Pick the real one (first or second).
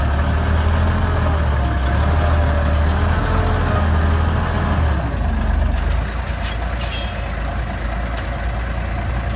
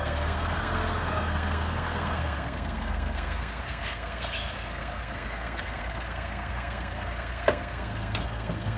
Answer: first